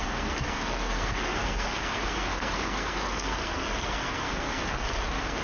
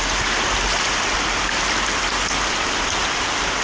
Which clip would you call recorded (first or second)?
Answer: second